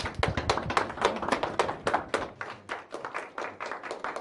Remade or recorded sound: recorded